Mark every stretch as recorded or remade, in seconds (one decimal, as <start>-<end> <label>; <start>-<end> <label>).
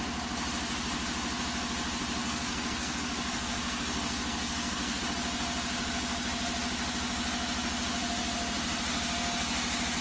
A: 0.0-2.2 recorded; 2.2-5.0 remade; 5.0-10.0 recorded